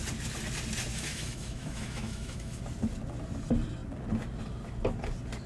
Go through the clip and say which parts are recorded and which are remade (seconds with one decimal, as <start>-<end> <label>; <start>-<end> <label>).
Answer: 0.0-0.9 recorded; 0.9-2.6 remade; 2.6-5.5 recorded